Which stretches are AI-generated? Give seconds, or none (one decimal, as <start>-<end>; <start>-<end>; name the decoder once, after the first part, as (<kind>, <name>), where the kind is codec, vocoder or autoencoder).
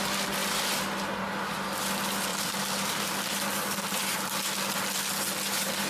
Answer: 0.4-1.9 (vocoder, BigVGAN v2); 2.3-3.2